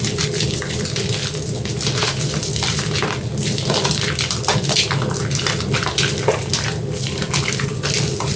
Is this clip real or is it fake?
real